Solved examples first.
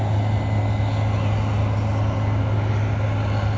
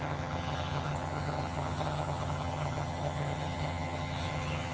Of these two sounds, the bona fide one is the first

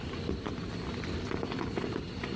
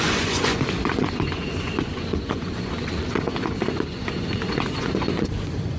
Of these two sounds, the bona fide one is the first